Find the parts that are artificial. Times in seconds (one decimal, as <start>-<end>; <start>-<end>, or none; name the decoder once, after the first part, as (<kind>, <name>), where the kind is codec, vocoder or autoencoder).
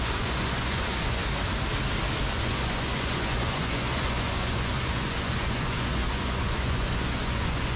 0.0-1.2 (vocoder, Vocos); 2.3-7.8